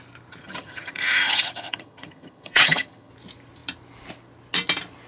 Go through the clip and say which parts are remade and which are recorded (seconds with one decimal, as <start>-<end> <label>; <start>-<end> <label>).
0.0-0.4 recorded; 0.4-3.1 remade; 3.1-5.1 recorded